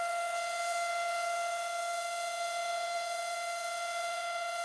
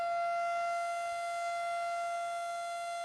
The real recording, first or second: second